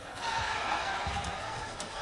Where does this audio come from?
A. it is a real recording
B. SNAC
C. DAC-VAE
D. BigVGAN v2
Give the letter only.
B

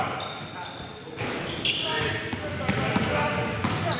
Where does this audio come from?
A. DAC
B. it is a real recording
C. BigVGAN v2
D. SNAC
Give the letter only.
B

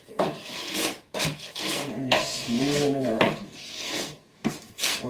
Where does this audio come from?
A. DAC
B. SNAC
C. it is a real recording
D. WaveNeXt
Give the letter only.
B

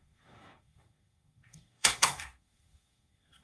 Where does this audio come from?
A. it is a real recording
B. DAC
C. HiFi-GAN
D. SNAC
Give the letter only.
D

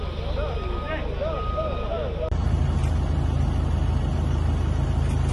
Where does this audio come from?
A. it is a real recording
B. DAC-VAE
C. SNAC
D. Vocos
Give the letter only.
A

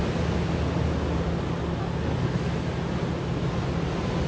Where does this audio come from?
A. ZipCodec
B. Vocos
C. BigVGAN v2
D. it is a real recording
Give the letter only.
D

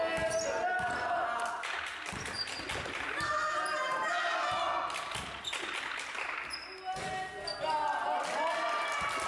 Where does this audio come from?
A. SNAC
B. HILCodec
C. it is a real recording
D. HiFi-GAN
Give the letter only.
C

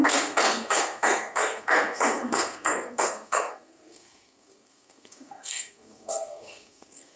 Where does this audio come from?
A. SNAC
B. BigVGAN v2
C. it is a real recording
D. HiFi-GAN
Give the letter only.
A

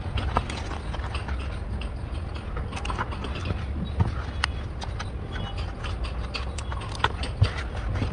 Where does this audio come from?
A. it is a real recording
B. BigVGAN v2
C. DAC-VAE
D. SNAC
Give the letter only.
A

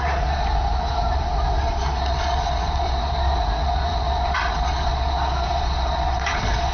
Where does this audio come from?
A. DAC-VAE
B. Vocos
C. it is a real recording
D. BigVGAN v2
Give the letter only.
B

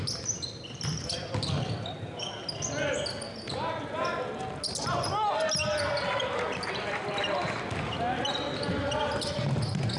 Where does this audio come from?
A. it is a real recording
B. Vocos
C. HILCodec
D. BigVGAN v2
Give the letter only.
A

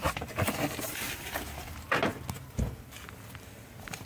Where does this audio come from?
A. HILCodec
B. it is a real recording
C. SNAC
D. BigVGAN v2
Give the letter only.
B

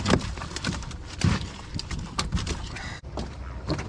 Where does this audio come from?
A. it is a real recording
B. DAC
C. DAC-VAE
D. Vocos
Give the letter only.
A